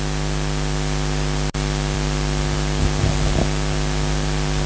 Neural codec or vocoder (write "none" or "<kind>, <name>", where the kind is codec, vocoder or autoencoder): none